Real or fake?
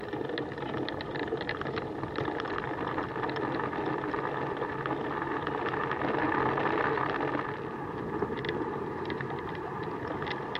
real